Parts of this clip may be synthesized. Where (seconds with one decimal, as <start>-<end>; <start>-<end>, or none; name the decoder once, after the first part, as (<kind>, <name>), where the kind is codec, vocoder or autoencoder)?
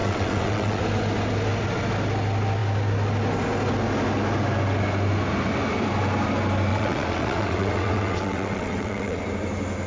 0.0-0.8 (vocoder, WaveNeXt); 6.7-9.2